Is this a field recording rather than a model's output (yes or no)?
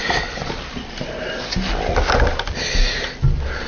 yes